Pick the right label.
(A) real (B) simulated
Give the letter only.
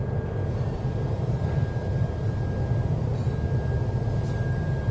A